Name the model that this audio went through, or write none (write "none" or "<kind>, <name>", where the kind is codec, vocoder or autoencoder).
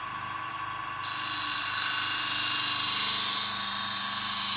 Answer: none